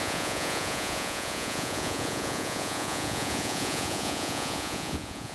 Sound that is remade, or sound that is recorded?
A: remade